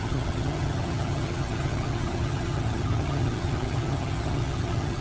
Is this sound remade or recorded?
remade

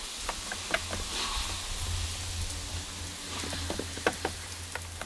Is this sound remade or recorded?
recorded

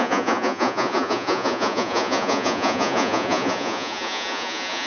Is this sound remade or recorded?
remade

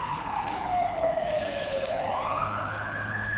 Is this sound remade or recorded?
remade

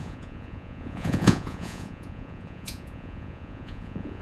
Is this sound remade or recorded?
remade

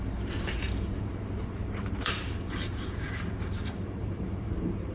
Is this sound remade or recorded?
remade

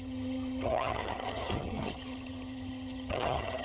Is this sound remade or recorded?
remade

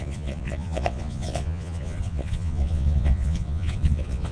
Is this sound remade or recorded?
remade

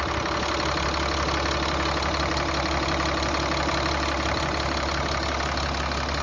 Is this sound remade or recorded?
recorded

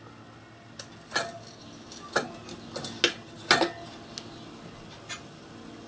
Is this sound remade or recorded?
recorded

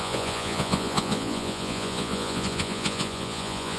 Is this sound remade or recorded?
remade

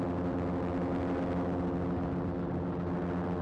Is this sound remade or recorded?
recorded